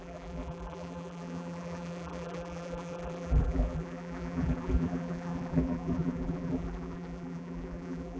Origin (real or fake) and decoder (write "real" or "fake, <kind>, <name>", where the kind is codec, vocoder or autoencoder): fake, vocoder, BigVGAN v2